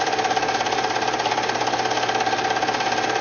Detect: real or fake real